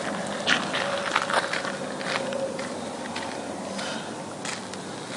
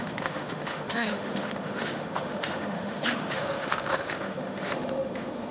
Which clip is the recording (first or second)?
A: first